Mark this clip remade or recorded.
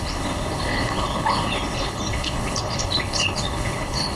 remade